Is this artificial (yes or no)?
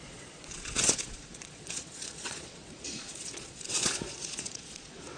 yes